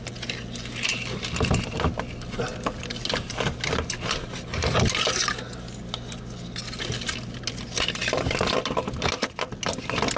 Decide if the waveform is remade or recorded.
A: recorded